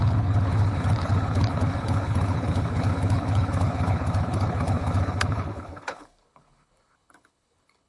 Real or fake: fake